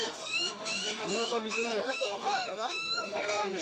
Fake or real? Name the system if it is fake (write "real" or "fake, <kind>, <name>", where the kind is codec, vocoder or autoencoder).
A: fake, autoencoder, DAC-VAE